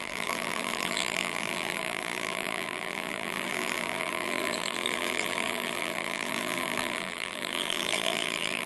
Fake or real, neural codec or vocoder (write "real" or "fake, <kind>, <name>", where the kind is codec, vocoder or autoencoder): fake, vocoder, BigVGAN v2